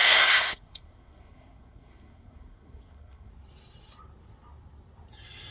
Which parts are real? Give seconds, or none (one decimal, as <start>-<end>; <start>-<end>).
3.3-5.5